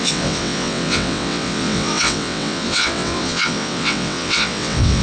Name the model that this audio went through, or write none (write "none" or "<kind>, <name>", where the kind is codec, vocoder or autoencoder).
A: vocoder, WaveNeXt